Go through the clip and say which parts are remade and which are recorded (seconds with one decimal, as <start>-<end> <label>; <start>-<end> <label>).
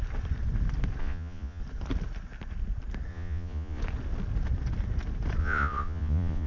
0.0-1.0 recorded; 1.0-1.6 remade; 1.6-3.1 recorded; 3.1-3.8 remade; 3.8-5.4 recorded; 5.4-6.5 remade